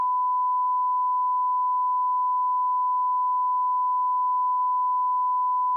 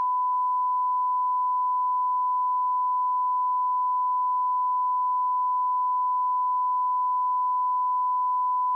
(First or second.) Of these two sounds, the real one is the second